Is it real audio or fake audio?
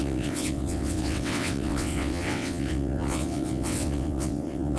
fake